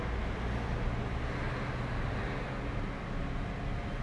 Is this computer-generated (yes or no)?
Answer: no